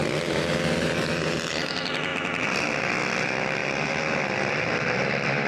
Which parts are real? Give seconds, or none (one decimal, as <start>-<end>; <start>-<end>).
0.0-5.5